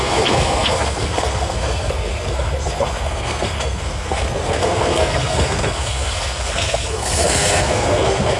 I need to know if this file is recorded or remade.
remade